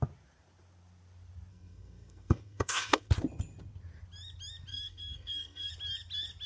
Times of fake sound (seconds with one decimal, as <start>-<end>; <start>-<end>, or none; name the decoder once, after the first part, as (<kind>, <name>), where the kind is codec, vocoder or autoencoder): 1.5-3.1 (codec, SNAC); 4.7-5.7